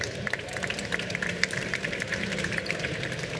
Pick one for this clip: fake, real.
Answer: fake